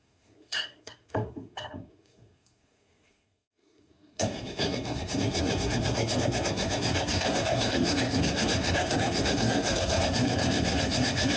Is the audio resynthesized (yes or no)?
yes